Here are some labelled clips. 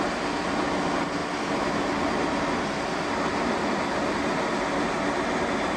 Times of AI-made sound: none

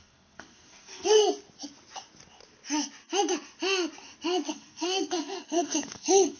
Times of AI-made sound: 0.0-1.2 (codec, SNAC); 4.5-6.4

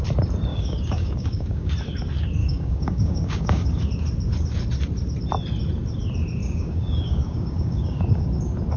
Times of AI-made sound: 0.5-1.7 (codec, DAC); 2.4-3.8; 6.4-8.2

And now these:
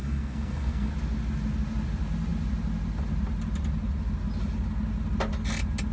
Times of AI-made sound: 0.0-0.9 (codec, SNAC)

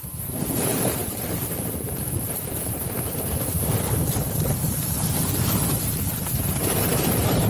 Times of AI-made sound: 0.0-7.5 (vocoder, BigVGAN v2)

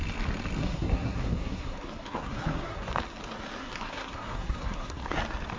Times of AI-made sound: 0.6-2.9 (codec, SNAC); 3.6-5.0

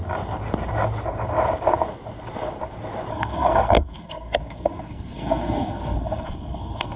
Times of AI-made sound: 3.1-7.0 (codec, SNAC)

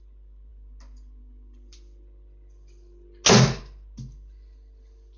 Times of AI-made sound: none